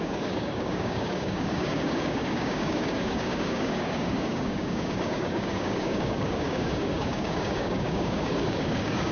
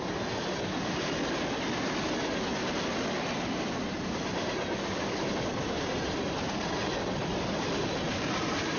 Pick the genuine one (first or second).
second